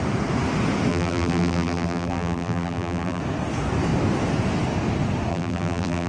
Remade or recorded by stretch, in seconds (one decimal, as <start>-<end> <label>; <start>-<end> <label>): 0.0-0.9 recorded; 0.9-3.2 remade; 3.2-5.3 recorded; 5.3-6.1 remade